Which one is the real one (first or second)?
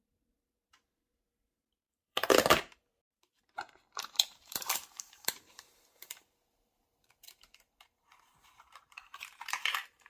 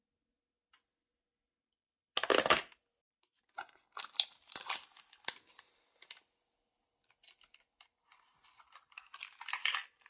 second